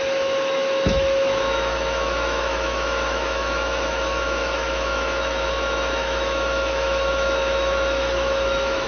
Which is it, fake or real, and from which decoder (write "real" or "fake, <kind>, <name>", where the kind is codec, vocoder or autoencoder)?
fake, autoencoder, DAC-VAE